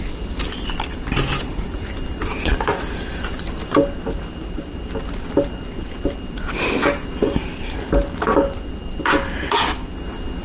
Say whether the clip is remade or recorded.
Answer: recorded